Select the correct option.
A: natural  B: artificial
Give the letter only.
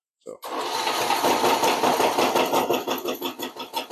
A